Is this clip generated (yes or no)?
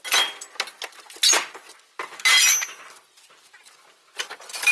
no